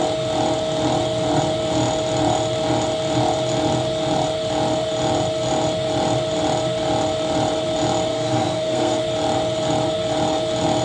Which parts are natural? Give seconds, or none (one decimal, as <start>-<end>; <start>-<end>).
0.0-8.1; 9.0-10.8